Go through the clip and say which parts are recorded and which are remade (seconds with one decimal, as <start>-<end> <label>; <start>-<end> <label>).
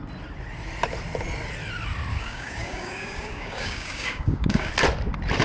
0.0-2.1 recorded; 2.1-4.7 remade; 4.7-5.4 recorded